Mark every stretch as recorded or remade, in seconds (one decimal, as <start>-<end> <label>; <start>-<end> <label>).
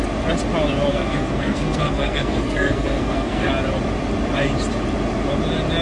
0.0-0.9 recorded; 0.9-3.5 remade; 3.5-5.8 recorded